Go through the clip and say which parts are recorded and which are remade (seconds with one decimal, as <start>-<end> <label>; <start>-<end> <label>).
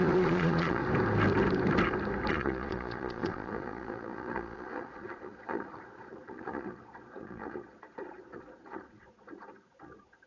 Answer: 0.0-0.8 remade; 0.8-2.3 recorded; 2.3-10.3 remade